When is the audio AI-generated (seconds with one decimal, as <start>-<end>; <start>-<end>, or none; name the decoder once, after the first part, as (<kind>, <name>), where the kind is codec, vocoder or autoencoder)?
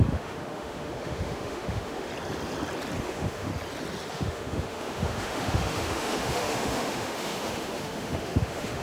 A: 0.0-2.1 (autoencoder, DAC-VAE); 3.0-3.5; 4.1-8.8